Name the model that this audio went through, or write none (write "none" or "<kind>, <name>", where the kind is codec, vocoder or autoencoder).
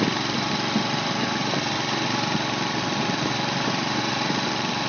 vocoder, BigVGAN v2